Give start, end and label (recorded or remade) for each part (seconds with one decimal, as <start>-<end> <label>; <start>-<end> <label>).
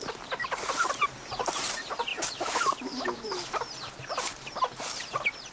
0.0-2.1 recorded; 2.1-3.5 remade; 3.5-5.5 recorded